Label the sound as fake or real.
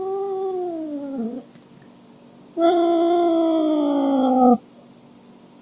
real